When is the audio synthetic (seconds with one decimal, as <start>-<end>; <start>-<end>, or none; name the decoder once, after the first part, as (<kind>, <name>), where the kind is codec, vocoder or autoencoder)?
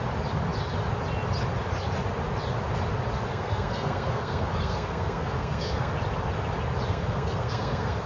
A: 3.3-5.9 (codec, SNAC); 6.9-8.1